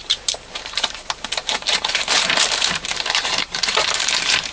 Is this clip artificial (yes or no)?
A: yes